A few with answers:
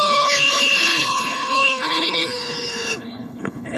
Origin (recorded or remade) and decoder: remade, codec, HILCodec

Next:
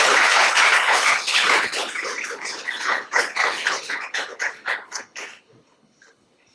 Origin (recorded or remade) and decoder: remade, codec, HILCodec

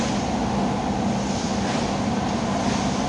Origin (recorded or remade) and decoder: recorded